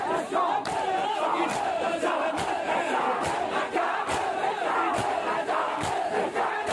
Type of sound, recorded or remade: recorded